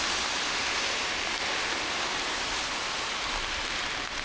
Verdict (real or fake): fake